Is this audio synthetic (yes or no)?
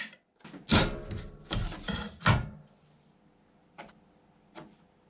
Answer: no